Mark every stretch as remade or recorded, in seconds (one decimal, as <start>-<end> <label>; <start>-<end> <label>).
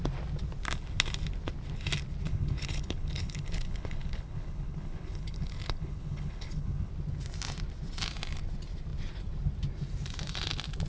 0.0-2.3 recorded; 2.3-6.9 remade; 6.9-10.9 recorded